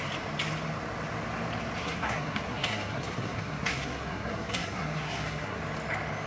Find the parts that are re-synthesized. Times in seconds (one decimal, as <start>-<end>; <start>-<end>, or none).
1.8-5.6